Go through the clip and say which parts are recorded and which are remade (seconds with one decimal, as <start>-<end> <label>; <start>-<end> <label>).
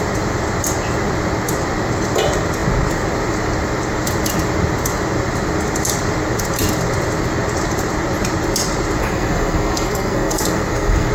0.0-9.0 recorded; 9.0-11.1 remade